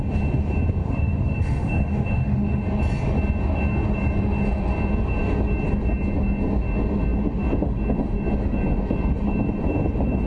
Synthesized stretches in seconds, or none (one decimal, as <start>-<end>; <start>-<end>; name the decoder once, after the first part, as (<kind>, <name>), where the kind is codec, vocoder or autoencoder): 0.8-2.6 (autoencoder, DAC-VAE)